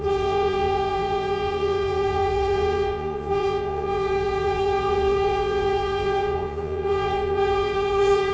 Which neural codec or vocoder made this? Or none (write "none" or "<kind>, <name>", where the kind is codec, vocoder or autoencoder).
vocoder, Vocos